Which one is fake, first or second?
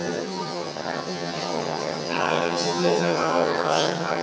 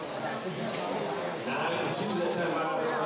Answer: first